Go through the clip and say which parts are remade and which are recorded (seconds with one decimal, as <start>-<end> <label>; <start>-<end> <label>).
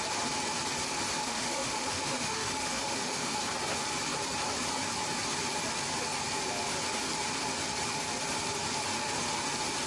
0.0-1.2 recorded; 1.2-3.4 remade; 3.4-9.9 recorded